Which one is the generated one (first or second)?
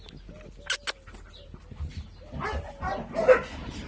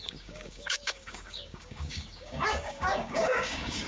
second